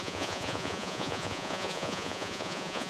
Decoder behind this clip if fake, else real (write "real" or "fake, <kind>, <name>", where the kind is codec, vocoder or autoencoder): fake, vocoder, Vocos